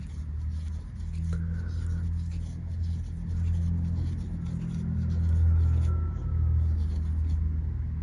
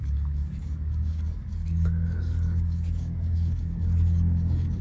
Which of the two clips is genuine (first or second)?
first